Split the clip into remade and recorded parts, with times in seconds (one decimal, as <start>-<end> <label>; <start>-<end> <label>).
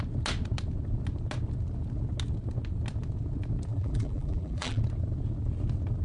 0.0-3.7 recorded; 3.7-4.8 remade; 4.8-6.0 recorded